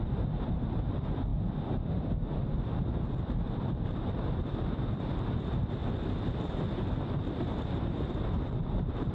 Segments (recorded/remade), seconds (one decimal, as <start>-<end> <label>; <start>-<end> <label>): 0.0-5.8 remade; 5.8-7.1 recorded; 7.1-9.1 remade